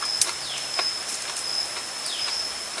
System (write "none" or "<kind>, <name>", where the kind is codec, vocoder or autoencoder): none